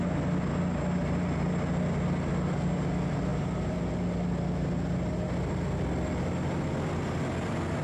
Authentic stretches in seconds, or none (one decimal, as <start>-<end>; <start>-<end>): 0.0-7.8